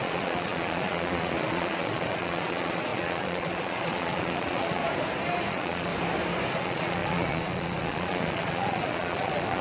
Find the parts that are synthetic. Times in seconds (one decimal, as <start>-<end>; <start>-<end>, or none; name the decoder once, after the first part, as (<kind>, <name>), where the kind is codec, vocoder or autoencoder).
0.0-4.8 (vocoder, Vocos); 5.5-5.9; 6.6-9.6